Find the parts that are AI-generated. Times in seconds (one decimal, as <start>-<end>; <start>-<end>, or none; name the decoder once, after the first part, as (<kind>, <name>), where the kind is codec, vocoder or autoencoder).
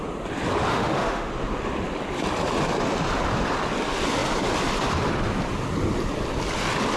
0.7-1.3 (autoencoder, DAC-VAE)